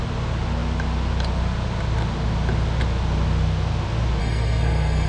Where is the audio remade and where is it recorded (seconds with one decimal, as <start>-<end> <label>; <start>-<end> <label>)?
0.0-4.2 recorded; 4.2-5.1 remade